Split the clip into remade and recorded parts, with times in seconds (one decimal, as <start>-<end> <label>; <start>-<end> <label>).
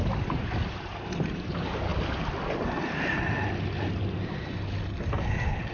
0.0-1.9 remade; 1.9-5.3 recorded; 5.3-5.7 remade